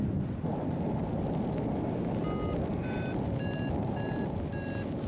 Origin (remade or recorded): recorded